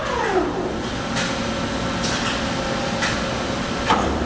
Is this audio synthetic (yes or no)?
no